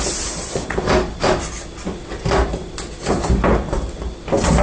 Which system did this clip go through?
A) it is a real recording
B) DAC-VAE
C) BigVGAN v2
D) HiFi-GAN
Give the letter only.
A